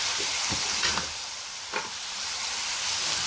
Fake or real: real